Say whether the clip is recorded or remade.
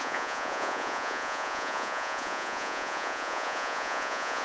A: remade